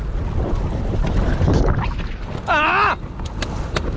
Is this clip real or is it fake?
real